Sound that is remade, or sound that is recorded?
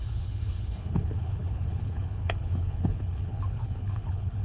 remade